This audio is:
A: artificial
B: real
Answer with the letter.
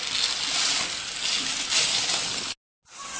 B